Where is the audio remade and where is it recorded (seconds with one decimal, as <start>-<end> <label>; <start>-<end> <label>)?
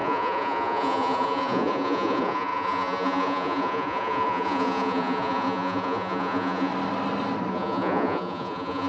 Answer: 0.0-6.7 remade; 6.7-7.5 recorded; 7.5-8.9 remade